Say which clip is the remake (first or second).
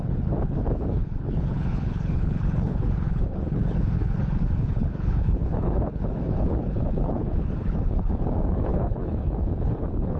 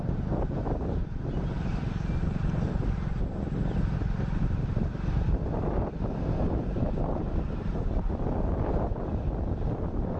first